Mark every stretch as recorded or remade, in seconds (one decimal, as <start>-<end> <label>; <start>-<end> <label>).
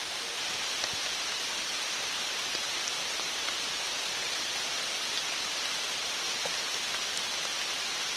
0.0-3.4 remade; 3.4-8.2 recorded